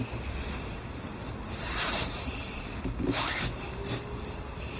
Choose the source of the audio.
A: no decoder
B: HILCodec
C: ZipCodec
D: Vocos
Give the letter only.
A